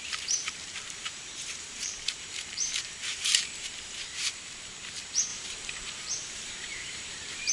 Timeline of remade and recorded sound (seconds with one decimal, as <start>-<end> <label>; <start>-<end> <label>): 0.0-7.5 remade

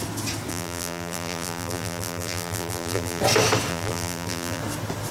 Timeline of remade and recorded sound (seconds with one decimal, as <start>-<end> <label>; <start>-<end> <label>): 0.0-0.5 recorded; 0.5-3.2 remade; 3.2-3.7 recorded; 3.7-4.6 remade; 4.6-5.1 recorded